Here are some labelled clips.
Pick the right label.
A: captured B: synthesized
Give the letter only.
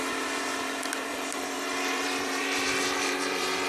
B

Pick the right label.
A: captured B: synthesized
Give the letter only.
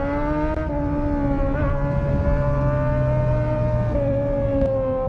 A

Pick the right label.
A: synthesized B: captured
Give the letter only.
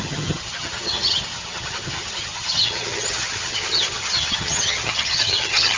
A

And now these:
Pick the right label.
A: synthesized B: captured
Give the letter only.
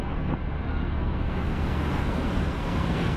A